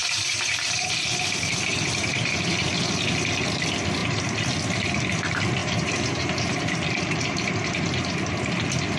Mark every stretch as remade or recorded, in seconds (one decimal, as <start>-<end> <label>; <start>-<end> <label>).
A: 0.0-2.5 remade; 2.5-4.0 recorded; 4.0-4.5 remade; 4.5-5.6 recorded; 5.6-9.0 remade